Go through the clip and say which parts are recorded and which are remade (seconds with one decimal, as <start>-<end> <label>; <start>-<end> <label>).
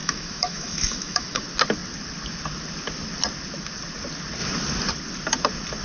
0.0-1.4 remade; 1.4-5.8 recorded